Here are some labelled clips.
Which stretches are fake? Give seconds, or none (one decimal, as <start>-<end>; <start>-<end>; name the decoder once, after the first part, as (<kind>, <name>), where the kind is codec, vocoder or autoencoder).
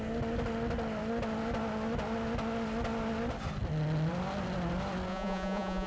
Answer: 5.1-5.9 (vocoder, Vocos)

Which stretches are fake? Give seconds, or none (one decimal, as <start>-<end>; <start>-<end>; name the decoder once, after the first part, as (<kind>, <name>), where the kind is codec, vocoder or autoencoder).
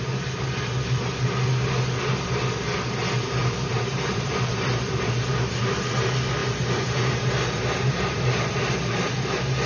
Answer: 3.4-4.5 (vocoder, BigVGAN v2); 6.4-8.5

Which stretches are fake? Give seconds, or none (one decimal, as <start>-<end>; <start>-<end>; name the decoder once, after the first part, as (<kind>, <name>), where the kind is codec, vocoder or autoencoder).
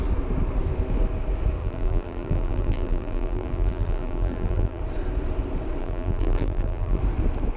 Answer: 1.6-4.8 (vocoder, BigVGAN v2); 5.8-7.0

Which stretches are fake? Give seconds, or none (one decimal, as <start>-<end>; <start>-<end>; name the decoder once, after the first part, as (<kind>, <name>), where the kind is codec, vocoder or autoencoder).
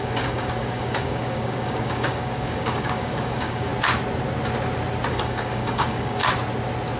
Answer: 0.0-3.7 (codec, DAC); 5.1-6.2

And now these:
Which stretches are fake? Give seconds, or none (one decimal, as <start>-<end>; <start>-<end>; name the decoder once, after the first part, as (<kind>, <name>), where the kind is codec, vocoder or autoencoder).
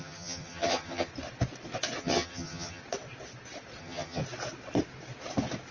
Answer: 0.0-1.1 (vocoder, HiFi-GAN); 2.0-2.8; 3.8-4.2